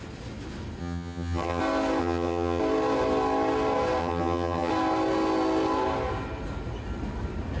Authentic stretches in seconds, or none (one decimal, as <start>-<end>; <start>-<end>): 0.0-0.8; 1.6-2.0; 2.6-4.0; 4.7-7.6